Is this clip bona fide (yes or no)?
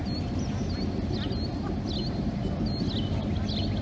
yes